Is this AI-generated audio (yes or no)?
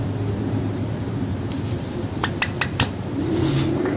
no